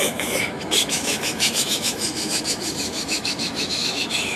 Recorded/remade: remade